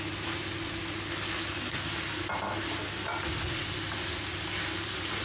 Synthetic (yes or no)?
no